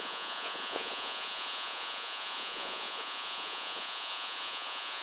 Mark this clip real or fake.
fake